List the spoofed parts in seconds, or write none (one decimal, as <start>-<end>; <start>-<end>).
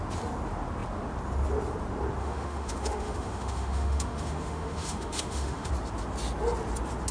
2.2-5.7